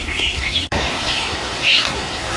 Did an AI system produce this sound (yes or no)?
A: yes